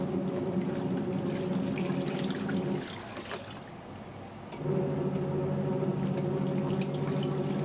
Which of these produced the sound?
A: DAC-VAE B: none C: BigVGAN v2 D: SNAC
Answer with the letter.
B